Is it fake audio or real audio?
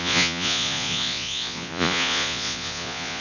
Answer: fake